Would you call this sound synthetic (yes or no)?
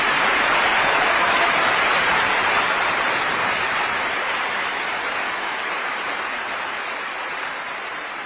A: yes